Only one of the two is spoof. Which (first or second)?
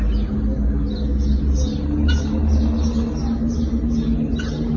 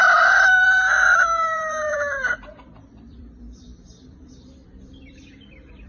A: second